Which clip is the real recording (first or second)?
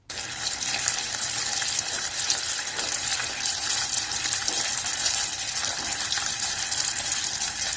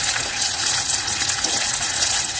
first